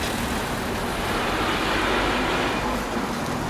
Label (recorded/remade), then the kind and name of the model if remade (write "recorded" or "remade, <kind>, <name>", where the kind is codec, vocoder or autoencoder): recorded